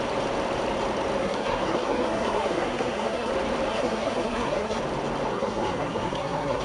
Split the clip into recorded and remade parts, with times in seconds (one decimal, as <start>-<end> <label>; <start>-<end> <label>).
0.0-1.2 recorded; 1.2-3.3 remade; 3.3-3.7 recorded; 3.7-4.8 remade; 4.8-5.3 recorded; 5.3-6.6 remade